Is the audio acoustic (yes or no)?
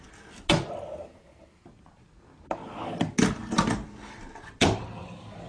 yes